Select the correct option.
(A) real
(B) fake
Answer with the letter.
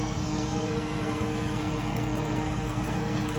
B